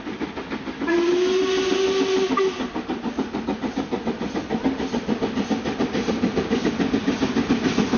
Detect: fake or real real